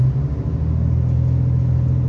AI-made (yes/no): no